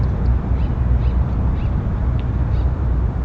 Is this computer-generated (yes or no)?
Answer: no